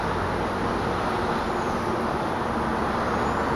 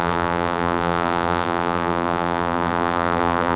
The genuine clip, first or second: first